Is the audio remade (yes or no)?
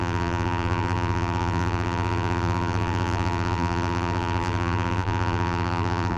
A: yes